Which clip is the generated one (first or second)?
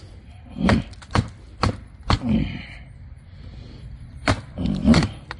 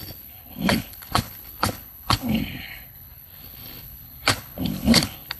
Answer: second